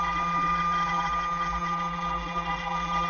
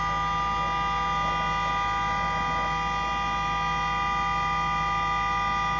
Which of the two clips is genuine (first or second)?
second